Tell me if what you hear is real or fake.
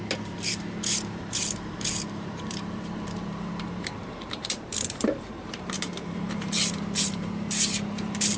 fake